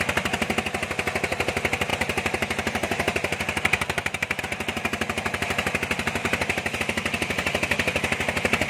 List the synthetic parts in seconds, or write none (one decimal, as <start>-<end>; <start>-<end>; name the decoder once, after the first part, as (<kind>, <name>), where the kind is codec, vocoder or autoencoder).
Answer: 1.9-4.4 (vocoder, BigVGAN v2); 6.2-6.8

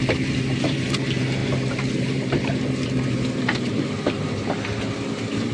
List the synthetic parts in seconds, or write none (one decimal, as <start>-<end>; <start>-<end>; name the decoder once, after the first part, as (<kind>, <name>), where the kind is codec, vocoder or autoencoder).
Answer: 0.0-5.5 (vocoder, BigVGAN v2)

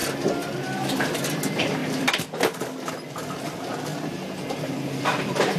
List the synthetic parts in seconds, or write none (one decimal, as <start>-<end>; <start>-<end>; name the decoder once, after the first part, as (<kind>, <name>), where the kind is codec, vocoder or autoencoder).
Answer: 1.0-3.9 (vocoder, BigVGAN v2); 4.5-5.6

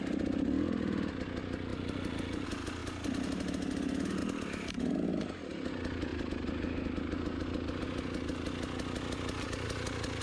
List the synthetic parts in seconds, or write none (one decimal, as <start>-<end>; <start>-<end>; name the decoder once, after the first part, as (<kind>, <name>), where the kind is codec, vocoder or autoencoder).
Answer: none

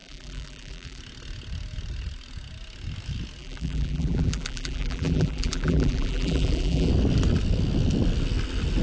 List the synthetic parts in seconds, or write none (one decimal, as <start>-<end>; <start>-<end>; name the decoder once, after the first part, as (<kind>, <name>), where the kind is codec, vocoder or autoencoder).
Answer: 0.0-1.0 (vocoder, BigVGAN v2); 3.4-6.9

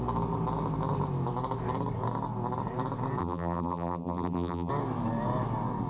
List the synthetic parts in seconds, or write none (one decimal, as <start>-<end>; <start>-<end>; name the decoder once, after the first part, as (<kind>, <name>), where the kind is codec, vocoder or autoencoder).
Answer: 3.2-4.7 (vocoder, BigVGAN v2)

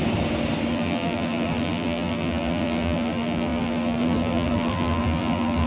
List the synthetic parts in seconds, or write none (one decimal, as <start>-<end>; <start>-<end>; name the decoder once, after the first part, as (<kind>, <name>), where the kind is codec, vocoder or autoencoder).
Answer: 0.7-5.7 (vocoder, BigVGAN v2)